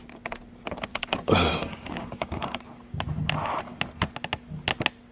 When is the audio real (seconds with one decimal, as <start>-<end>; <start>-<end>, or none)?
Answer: 0.0-0.9; 2.6-5.1